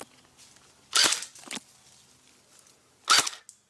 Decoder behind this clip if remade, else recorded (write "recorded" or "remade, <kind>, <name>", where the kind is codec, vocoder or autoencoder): recorded